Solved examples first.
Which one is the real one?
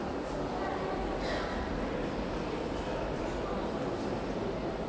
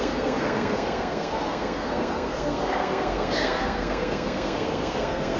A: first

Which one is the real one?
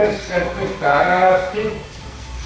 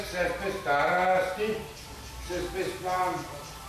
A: second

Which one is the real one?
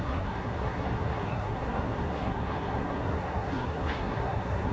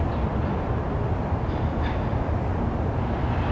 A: second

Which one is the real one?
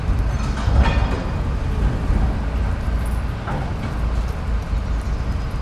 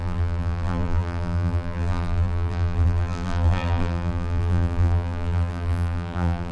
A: first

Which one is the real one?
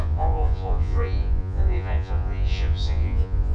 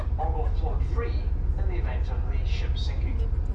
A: second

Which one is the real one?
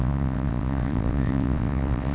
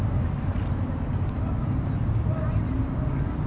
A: second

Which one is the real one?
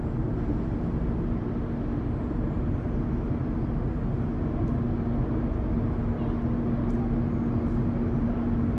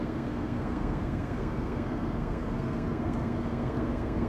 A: first